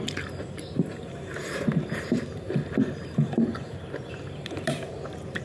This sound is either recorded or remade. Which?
remade